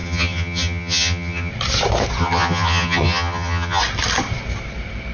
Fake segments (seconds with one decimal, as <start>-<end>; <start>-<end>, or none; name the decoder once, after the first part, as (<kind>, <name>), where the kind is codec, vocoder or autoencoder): 0.0-1.5 (vocoder, HiFi-GAN); 2.2-3.8